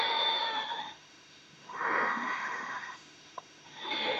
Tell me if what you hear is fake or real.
fake